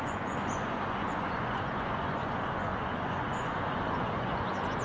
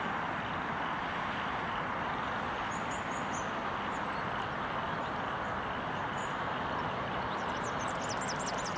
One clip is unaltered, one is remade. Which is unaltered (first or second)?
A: second